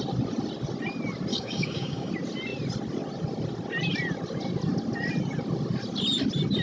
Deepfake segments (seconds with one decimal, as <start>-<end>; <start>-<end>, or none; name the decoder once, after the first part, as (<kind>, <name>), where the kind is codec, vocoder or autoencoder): 1.3-2.1 (codec, DAC)